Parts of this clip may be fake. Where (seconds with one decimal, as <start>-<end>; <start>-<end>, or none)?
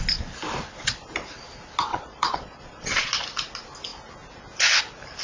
1.9-3.1